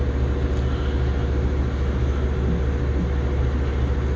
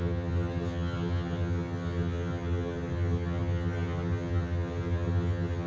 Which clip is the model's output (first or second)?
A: second